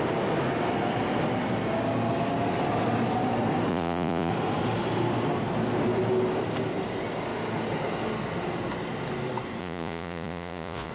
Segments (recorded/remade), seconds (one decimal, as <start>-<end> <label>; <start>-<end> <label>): 0.0-3.7 recorded; 3.7-4.3 remade; 4.3-9.6 recorded; 9.6-10.9 remade